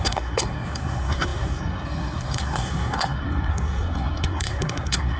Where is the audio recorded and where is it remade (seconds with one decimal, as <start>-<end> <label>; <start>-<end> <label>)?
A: 0.0-5.2 remade